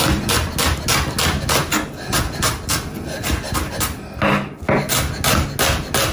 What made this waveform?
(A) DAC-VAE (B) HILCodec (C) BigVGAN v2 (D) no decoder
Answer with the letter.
D